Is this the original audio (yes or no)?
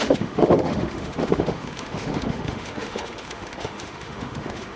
no